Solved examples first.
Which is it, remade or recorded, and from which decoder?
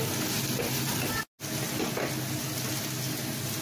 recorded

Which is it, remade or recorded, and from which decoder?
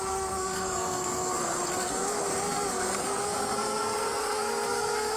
remade, codec, SNAC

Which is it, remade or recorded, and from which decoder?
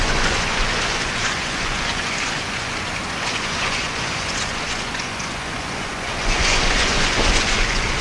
remade, vocoder, Vocos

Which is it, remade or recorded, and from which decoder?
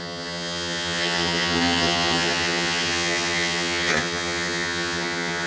remade, vocoder, HiFi-GAN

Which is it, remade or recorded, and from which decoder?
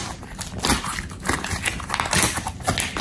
recorded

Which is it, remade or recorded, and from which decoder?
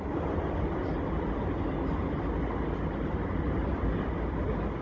recorded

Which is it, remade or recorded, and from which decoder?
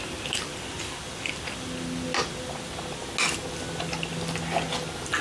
recorded